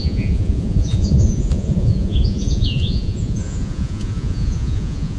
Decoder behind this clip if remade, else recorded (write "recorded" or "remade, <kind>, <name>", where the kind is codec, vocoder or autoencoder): remade, vocoder, Vocos